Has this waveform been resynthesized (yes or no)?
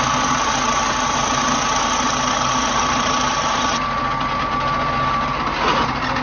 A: no